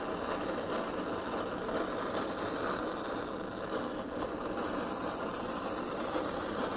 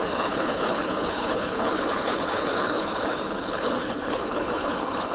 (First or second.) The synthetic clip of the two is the second